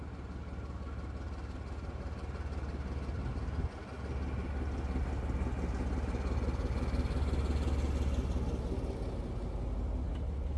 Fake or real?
real